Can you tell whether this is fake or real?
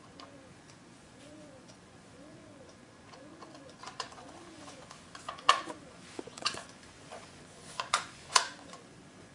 fake